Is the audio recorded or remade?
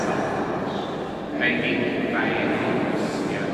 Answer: recorded